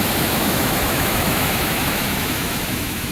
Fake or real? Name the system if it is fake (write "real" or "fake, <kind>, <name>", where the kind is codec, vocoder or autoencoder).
fake, autoencoder, DAC-VAE